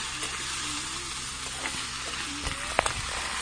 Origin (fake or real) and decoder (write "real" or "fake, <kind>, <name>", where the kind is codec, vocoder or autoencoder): real